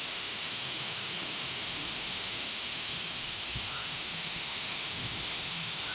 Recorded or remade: remade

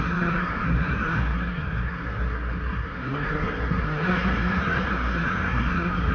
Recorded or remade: remade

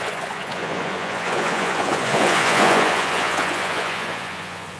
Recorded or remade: remade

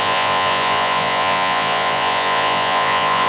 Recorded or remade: remade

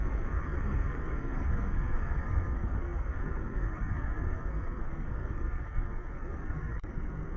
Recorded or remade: remade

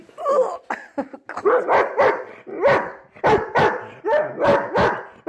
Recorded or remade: recorded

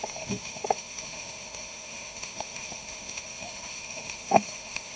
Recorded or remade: remade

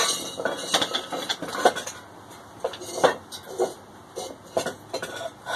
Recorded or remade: recorded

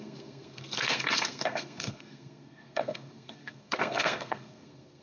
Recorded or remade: remade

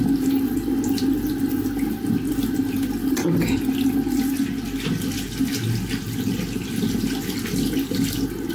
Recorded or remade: recorded